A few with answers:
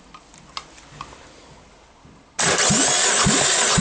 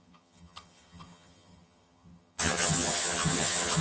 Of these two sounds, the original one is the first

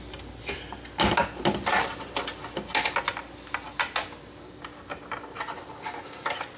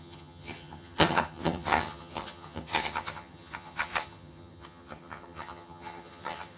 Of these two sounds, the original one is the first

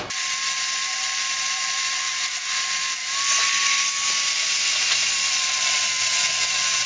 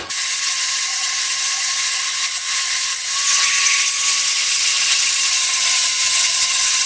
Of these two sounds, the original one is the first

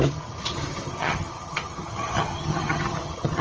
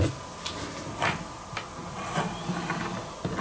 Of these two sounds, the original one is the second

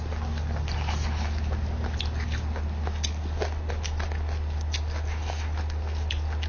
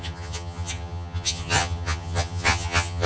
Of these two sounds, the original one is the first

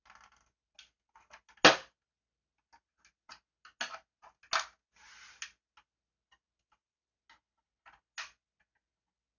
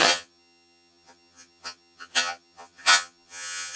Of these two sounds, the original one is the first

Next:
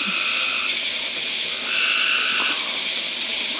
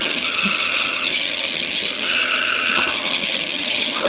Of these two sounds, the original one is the first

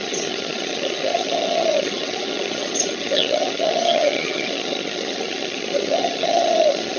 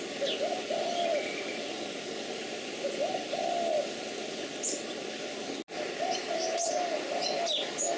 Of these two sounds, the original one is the second